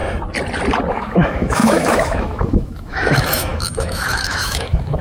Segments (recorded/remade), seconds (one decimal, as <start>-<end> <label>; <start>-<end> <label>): 0.0-0.9 recorded; 0.9-5.0 remade